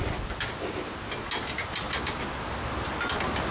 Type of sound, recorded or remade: recorded